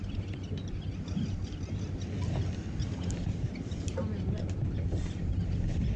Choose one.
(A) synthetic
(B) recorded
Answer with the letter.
B